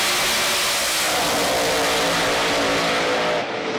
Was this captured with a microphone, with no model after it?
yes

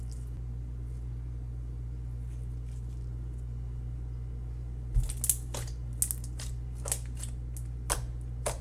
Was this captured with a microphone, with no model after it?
yes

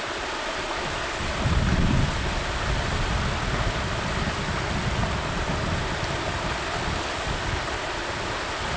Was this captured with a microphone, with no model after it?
yes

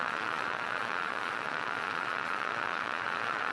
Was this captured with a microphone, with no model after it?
no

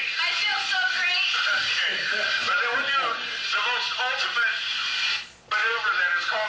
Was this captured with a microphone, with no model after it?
yes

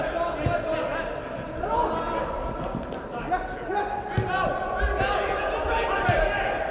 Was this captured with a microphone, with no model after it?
yes